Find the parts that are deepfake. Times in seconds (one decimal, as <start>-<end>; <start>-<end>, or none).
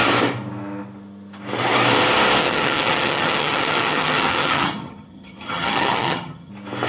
2.4-6.5